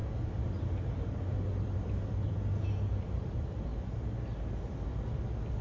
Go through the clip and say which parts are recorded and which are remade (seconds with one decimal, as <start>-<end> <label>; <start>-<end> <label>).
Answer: 0.0-5.6 recorded